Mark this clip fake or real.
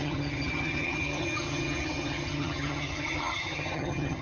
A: fake